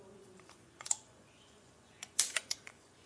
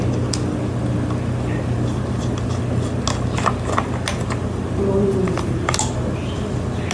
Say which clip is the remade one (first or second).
first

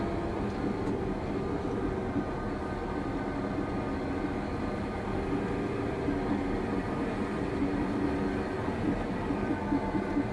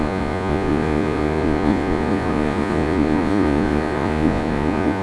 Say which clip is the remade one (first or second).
second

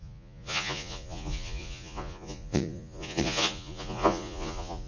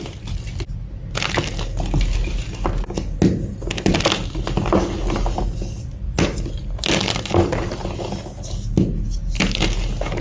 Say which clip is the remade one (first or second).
first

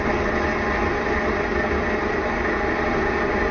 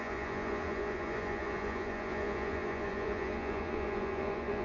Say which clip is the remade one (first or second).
second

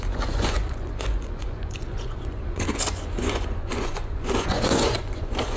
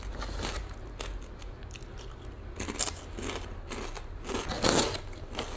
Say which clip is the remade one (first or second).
first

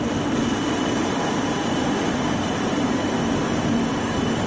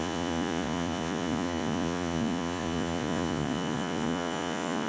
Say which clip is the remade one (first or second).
second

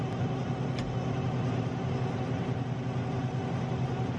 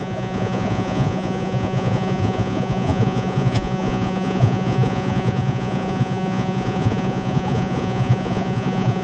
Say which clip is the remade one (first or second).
second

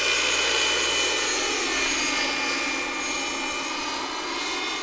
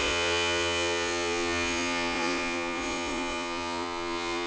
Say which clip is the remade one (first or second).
second